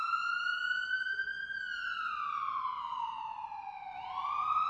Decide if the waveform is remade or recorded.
recorded